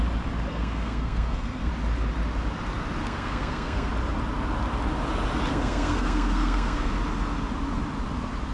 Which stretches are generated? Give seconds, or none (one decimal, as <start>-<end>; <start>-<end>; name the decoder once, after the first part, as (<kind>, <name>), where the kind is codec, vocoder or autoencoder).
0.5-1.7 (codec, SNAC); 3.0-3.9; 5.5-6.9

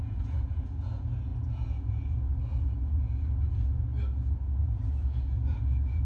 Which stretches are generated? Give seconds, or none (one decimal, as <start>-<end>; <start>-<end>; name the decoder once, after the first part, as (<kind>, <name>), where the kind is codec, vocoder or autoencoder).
0.0-3.9 (vocoder, Vocos); 4.6-6.0

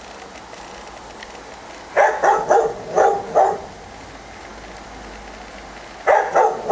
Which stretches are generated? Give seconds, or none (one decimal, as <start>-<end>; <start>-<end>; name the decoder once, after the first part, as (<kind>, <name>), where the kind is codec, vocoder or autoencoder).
none

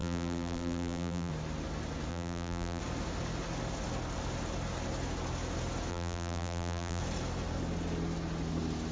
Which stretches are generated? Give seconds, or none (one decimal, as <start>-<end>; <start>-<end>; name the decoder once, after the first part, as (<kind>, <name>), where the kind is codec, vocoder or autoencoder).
0.0-1.3 (vocoder, BigVGAN v2); 2.1-2.8; 5.9-7.0